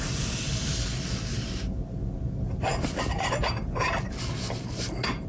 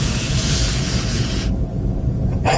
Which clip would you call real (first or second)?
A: first